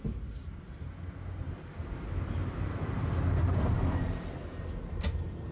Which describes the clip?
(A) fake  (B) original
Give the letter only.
B